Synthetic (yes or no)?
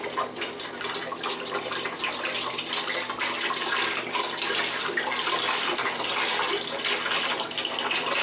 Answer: no